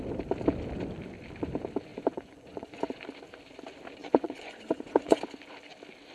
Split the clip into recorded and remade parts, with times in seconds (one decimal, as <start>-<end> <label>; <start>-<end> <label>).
0.0-1.9 recorded; 1.9-2.8 remade; 2.8-4.0 recorded; 4.0-5.2 remade; 5.2-6.1 recorded